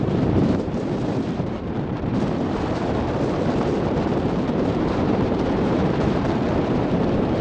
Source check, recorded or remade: remade